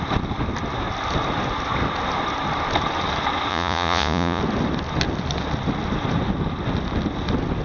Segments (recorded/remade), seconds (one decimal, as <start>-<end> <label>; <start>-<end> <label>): 0.0-3.5 recorded; 3.5-4.4 remade; 4.4-7.6 recorded